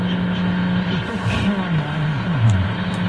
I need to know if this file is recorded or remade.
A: recorded